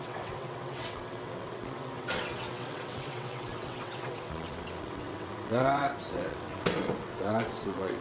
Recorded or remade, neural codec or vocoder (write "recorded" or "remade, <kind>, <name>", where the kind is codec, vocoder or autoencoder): remade, vocoder, WaveNeXt